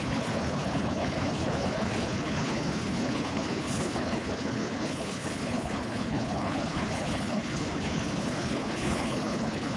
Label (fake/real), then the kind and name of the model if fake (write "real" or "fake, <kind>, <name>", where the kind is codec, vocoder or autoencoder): fake, codec, HILCodec